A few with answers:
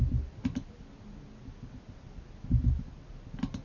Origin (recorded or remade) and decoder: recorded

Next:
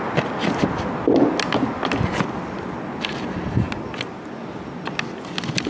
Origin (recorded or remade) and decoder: recorded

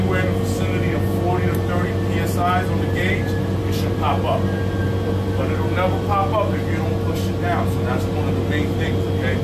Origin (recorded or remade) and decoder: recorded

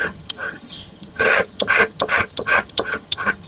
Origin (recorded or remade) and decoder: remade, vocoder, HiFi-GAN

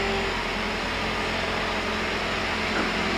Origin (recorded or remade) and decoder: recorded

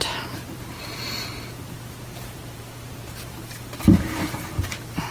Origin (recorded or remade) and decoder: remade, vocoder, BigVGAN v2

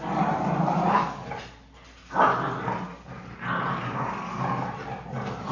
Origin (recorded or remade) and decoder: recorded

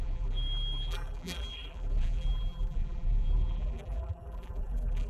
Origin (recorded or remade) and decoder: remade, vocoder, BigVGAN v2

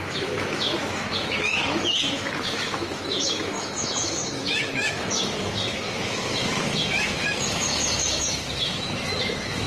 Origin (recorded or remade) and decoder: remade, autoencoder, DAC-VAE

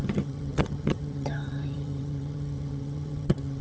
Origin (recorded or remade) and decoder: remade, vocoder, HiFi-GAN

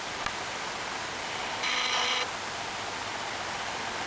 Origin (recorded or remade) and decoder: recorded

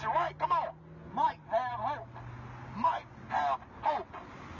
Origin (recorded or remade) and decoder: recorded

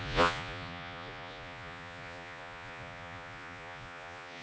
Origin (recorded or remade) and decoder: remade, vocoder, Vocos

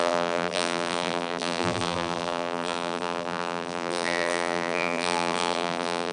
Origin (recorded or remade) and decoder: remade, vocoder, BigVGAN v2